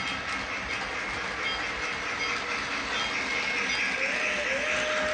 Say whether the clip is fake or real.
real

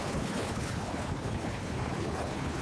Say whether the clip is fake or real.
fake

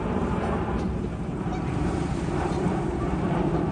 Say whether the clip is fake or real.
fake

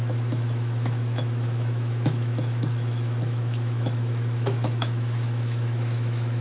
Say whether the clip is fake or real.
fake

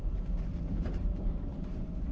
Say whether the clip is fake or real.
fake